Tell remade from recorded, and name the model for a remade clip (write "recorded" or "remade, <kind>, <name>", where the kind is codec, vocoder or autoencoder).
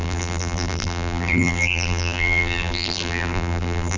remade, vocoder, BigVGAN v2